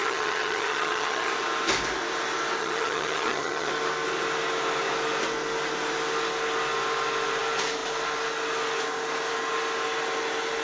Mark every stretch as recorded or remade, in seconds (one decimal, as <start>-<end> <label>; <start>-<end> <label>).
0.0-1.3 remade; 1.3-2.6 recorded; 2.6-3.7 remade; 3.7-10.6 recorded